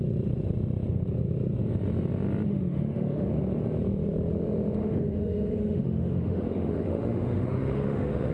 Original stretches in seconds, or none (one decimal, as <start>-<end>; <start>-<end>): 0.0-2.5; 3.3-4.8